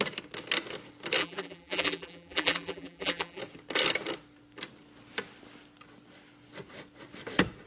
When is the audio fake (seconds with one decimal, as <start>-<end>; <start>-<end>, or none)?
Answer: 1.2-3.4